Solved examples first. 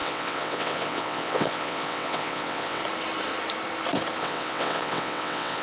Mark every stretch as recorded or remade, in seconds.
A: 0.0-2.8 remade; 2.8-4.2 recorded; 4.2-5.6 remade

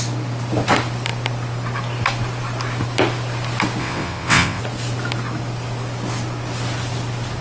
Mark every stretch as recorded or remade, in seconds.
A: 0.0-3.8 recorded; 3.8-4.6 remade; 4.6-7.4 recorded

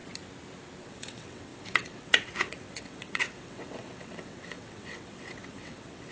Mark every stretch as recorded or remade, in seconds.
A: 0.0-0.8 recorded; 0.8-6.1 remade

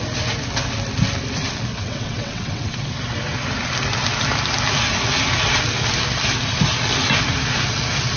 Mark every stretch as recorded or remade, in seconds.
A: 0.0-1.7 recorded; 1.7-2.8 remade; 2.8-8.2 recorded

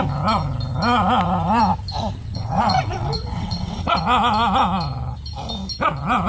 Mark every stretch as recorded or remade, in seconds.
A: 0.0-2.2 recorded; 2.2-3.9 remade; 3.9-6.3 recorded

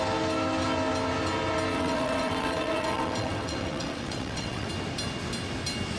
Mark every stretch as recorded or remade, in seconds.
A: 0.0-1.7 recorded; 1.7-4.7 remade; 4.7-6.0 recorded

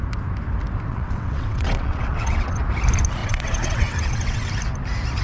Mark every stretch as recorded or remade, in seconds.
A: 0.0-0.9 recorded; 0.9-2.6 remade; 2.6-3.2 recorded; 3.2-4.5 remade; 4.5-5.2 recorded

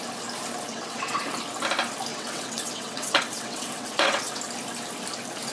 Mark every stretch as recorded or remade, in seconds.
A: 0.0-0.7 recorded; 0.7-1.2 remade; 1.2-2.1 recorded; 2.1-4.4 remade; 4.4-5.5 recorded